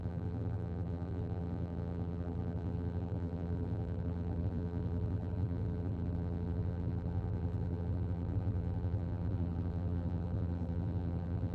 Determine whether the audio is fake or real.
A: fake